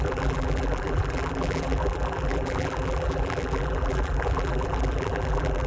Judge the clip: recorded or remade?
remade